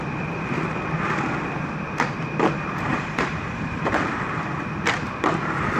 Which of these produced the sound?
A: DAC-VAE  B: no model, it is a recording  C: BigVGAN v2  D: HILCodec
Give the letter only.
C